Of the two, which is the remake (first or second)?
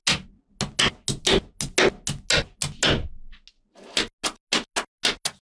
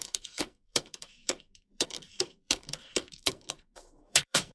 second